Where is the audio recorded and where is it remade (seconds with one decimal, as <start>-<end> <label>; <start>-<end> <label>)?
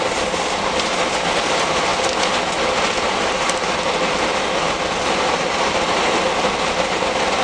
0.0-7.4 recorded